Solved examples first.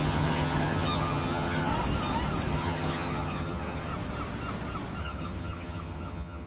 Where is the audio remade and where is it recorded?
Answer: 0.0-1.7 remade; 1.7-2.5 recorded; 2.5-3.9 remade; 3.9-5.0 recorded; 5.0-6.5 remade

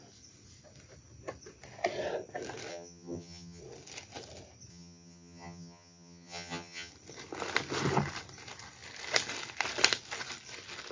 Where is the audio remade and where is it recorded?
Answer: 0.0-2.7 recorded; 2.7-3.6 remade; 3.6-4.7 recorded; 4.7-6.9 remade; 6.9-10.9 recorded

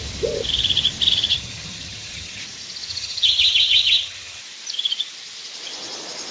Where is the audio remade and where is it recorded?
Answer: 0.0-1.3 recorded; 1.3-2.4 remade; 2.4-2.9 recorded; 2.9-4.4 remade; 4.4-6.3 recorded

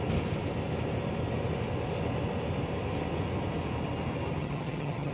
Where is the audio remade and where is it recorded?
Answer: 0.0-4.4 recorded; 4.4-5.1 remade

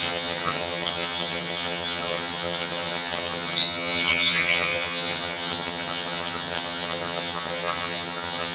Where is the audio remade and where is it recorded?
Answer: 0.0-8.5 remade

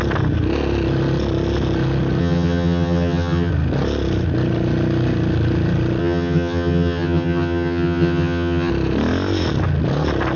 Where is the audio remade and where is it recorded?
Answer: 0.0-2.2 recorded; 2.2-3.5 remade; 3.5-6.0 recorded; 6.0-8.7 remade; 8.7-10.4 recorded

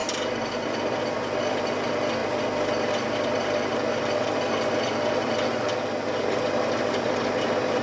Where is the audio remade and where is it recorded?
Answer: 0.0-7.8 recorded

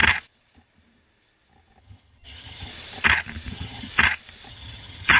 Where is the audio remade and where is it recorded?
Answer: 0.0-1.8 recorded; 1.8-2.7 remade; 2.7-3.5 recorded; 3.5-3.9 remade; 3.9-4.5 recorded; 4.5-5.2 remade